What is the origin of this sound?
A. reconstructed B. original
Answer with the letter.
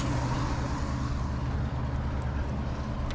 B